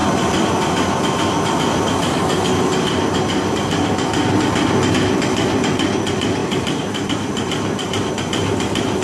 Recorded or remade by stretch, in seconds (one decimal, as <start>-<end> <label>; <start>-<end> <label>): 0.0-6.4 recorded; 6.4-8.1 remade; 8.1-9.0 recorded

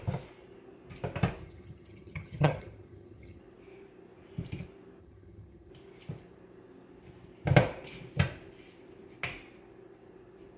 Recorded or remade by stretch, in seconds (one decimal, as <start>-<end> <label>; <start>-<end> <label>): 0.0-1.4 recorded; 1.4-3.4 remade; 3.4-5.0 recorded; 5.0-5.7 remade; 5.7-10.6 recorded

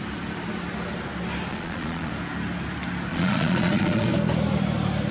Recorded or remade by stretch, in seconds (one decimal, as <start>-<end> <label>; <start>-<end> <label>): 0.0-1.5 recorded; 1.5-2.1 remade; 2.1-3.1 recorded; 3.1-4.1 remade; 4.1-5.1 recorded

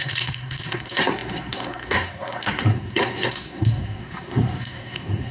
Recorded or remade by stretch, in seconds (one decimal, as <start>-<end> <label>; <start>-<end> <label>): 0.0-5.3 remade

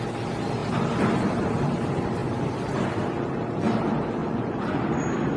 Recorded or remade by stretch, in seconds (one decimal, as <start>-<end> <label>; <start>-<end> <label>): 0.0-4.2 recorded; 4.2-4.8 remade; 4.8-5.4 recorded

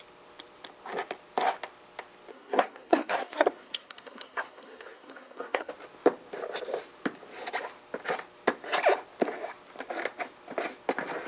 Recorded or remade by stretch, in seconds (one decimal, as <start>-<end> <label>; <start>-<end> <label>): 0.0-2.3 recorded; 2.3-5.7 remade; 5.7-11.3 recorded